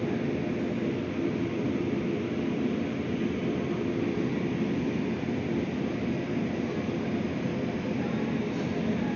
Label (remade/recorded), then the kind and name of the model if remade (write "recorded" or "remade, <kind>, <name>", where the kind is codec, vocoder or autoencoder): recorded